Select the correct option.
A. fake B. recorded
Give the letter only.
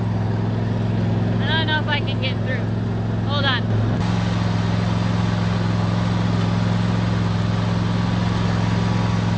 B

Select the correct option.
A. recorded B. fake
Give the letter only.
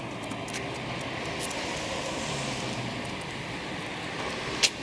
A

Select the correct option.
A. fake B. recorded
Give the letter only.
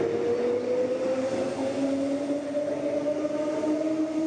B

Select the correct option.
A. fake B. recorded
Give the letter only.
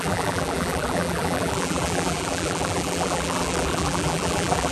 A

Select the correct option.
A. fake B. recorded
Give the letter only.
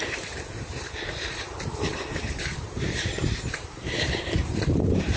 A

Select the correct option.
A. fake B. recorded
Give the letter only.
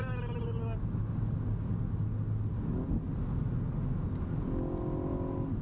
B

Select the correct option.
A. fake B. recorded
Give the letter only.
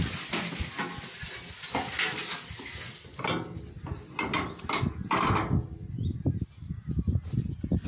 B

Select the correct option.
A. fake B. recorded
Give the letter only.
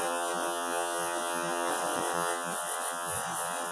A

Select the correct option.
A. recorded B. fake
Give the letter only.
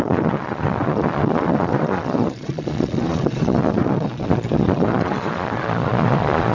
B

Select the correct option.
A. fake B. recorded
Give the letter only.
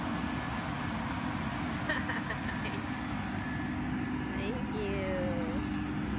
B